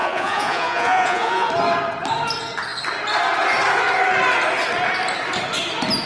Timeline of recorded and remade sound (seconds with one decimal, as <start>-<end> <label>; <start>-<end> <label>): 0.0-1.5 remade; 1.5-6.1 recorded

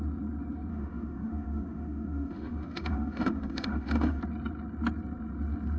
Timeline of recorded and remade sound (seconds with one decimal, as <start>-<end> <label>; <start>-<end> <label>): 0.0-0.7 recorded; 0.7-4.2 remade; 4.2-5.8 recorded

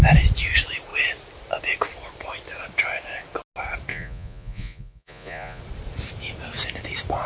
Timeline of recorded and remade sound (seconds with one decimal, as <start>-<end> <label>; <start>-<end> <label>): 0.0-3.9 recorded; 3.9-5.6 remade; 5.6-7.3 recorded

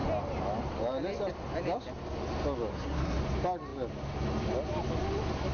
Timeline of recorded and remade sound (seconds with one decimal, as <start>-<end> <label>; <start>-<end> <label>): 0.0-2.7 recorded; 2.7-3.2 remade; 3.2-5.5 recorded

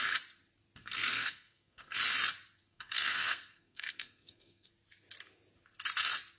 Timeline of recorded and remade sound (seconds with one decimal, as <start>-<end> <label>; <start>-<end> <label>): 0.0-0.8 recorded; 0.8-2.0 remade; 2.0-2.6 recorded; 2.6-4.7 remade; 4.7-6.4 recorded

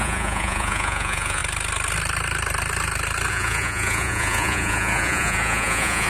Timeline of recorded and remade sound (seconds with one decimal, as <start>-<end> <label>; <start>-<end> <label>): 0.0-1.4 remade; 1.4-3.3 recorded; 3.3-6.1 remade

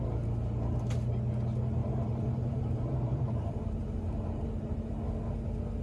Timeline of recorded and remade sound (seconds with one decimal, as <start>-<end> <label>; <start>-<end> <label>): 0.0-1.8 recorded; 1.8-4.9 remade; 4.9-5.8 recorded

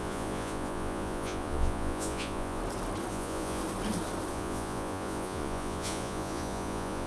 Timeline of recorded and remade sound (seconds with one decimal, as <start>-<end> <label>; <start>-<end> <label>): 0.0-2.6 remade; 2.6-3.1 recorded; 3.1-3.6 remade; 3.6-4.3 recorded; 4.3-7.1 remade